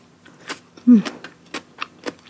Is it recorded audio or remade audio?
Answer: recorded